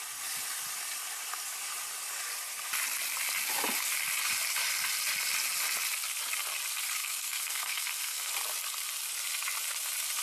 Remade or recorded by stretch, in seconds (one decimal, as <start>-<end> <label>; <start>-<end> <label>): 0.0-7.0 recorded; 7.0-8.3 remade; 8.3-10.2 recorded

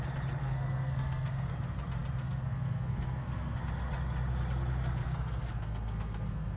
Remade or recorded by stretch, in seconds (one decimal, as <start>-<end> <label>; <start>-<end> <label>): 0.0-0.4 recorded; 0.4-1.5 remade; 1.5-2.2 recorded; 2.2-3.6 remade; 3.6-5.0 recorded; 5.0-6.6 remade

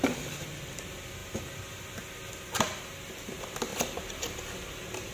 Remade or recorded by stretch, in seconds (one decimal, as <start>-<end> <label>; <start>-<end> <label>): 0.0-5.1 recorded

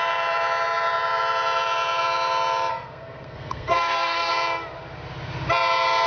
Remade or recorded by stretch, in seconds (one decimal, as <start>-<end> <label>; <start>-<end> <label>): 0.0-2.7 recorded; 2.7-4.3 remade; 4.3-6.1 recorded

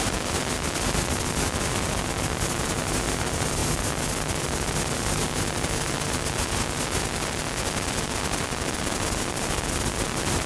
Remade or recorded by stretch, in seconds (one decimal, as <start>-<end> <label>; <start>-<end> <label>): 0.0-10.5 recorded

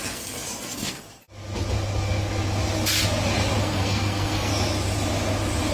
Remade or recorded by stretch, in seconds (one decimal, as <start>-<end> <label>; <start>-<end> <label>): 0.0-1.2 remade; 1.2-3.6 recorded; 3.6-4.5 remade; 4.5-5.7 recorded